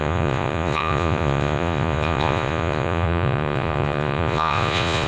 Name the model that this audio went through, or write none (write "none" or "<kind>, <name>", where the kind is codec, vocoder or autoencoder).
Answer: vocoder, Vocos